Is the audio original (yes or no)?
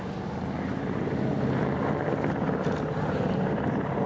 yes